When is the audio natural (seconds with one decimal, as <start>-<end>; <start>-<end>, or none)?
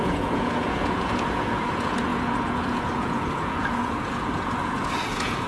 none